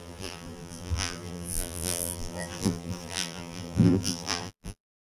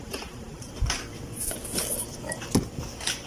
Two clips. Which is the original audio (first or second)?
second